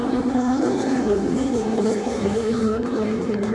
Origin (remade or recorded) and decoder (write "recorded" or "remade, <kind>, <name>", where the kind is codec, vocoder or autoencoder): remade, codec, SNAC